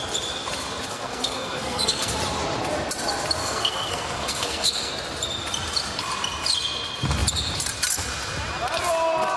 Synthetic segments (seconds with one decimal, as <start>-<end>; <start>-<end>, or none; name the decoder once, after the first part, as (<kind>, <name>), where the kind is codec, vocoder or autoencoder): 0.9-2.1 (codec, SNAC); 3.4-4.9